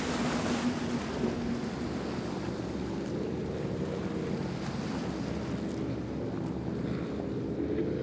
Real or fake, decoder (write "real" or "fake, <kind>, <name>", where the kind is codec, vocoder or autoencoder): real